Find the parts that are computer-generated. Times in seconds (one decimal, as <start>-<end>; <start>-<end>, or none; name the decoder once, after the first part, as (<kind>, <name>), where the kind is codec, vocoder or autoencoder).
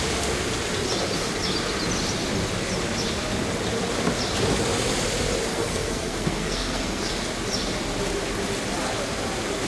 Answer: 5.5-7.1 (codec, SNAC)